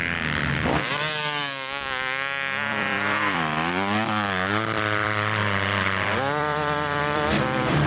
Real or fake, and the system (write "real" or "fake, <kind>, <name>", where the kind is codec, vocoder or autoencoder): fake, vocoder, BigVGAN v2